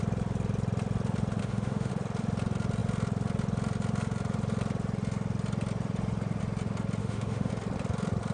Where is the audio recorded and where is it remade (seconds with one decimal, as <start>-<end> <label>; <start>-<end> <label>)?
0.0-1.4 recorded; 1.4-1.9 remade; 1.9-7.0 recorded; 7.0-7.5 remade; 7.5-8.3 recorded